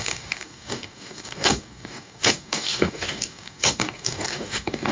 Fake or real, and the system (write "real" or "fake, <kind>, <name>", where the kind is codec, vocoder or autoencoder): fake, codec, DAC